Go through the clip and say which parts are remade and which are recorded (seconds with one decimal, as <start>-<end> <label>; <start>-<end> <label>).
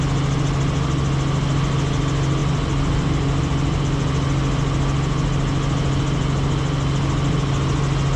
0.0-2.4 recorded; 2.4-3.8 remade; 3.8-8.2 recorded